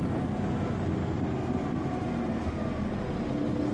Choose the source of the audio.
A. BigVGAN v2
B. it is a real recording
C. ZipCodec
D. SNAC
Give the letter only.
B